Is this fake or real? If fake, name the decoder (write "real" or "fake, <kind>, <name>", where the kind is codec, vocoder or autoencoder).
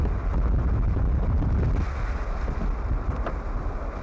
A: real